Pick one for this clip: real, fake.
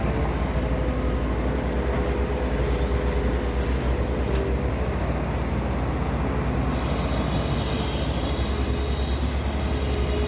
real